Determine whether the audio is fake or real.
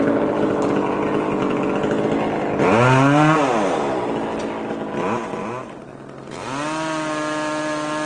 real